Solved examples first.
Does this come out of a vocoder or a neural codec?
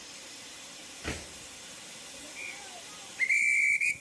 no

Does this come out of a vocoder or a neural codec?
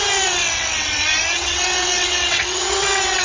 yes